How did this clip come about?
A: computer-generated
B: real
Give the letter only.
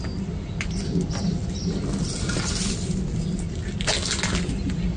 B